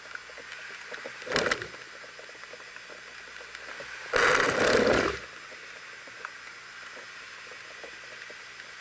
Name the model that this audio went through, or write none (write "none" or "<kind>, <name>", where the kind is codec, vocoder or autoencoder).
none